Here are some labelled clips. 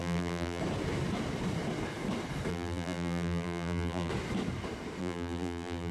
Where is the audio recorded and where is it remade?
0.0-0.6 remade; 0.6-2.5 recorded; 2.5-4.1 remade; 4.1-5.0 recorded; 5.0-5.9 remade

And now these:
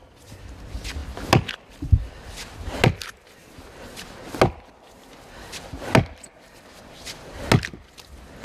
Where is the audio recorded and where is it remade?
0.0-8.4 recorded

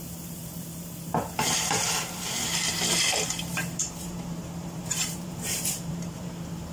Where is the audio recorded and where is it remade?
0.0-6.7 remade

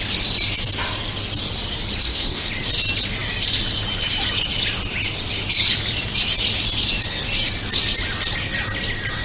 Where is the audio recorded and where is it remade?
0.0-2.0 recorded; 2.0-2.5 remade; 2.5-9.2 recorded